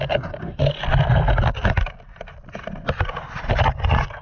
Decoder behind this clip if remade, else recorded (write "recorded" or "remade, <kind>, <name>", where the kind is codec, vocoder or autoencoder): recorded